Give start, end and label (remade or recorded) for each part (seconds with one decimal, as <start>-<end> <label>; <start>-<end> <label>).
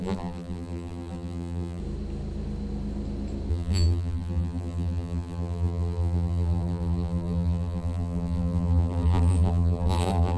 0.0-1.8 remade; 1.8-3.5 recorded; 3.5-10.4 remade